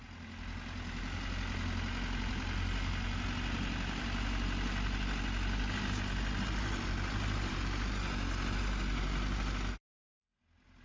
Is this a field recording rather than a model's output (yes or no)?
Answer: yes